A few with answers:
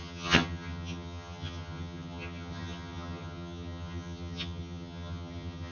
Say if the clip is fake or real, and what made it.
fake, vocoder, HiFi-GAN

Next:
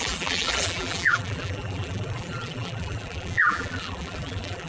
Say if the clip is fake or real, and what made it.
fake, vocoder, BigVGAN v2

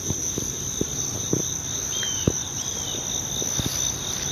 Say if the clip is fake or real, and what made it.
real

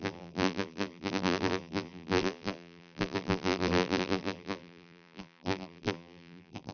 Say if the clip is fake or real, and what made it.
fake, vocoder, BigVGAN v2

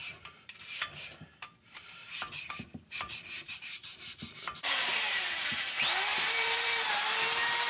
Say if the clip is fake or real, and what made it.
fake, vocoder, BigVGAN v2